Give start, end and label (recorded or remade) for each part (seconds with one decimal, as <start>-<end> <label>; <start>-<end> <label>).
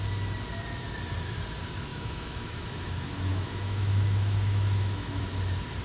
0.0-1.9 recorded; 1.9-5.2 remade; 5.2-5.8 recorded